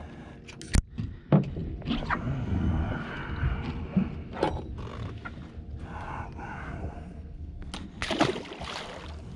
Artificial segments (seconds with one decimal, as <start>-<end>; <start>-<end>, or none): 6.8-7.7